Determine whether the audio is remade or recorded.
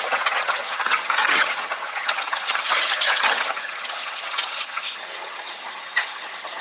remade